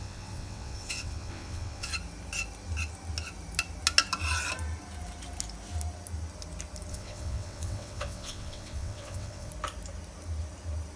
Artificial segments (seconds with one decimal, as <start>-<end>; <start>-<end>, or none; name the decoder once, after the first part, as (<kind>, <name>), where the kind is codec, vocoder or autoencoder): 0.0-1.9 (vocoder, WaveNeXt); 6.9-9.5